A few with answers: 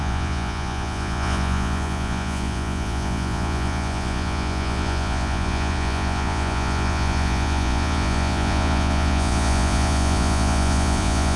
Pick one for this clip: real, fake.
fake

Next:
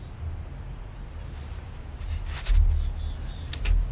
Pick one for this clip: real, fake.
real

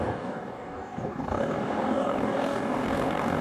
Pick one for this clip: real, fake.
fake